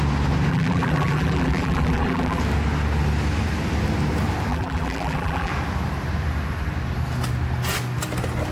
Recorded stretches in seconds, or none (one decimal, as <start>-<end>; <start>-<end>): 0.0-0.5; 2.4-4.5; 5.5-8.5